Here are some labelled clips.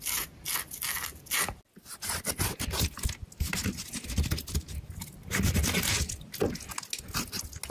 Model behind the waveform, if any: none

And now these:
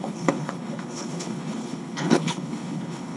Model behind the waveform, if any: codec, HILCodec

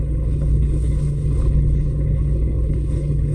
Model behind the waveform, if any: codec, HILCodec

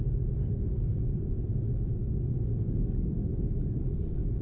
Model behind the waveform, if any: vocoder, BigVGAN v2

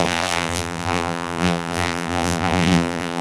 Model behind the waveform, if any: vocoder, BigVGAN v2